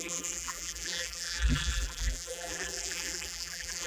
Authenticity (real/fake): fake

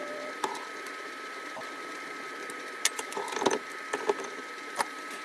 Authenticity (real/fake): fake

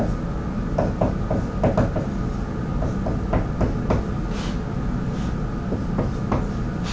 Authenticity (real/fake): real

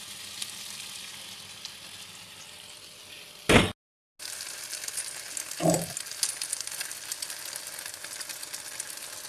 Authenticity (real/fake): real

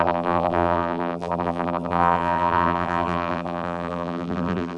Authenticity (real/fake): fake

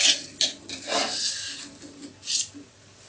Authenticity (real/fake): real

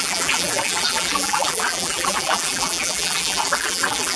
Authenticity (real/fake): fake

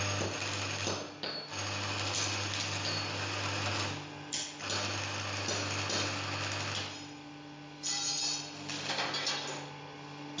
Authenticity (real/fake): real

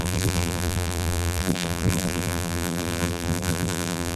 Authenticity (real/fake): fake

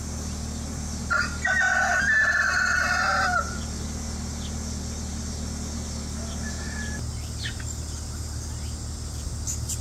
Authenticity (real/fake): real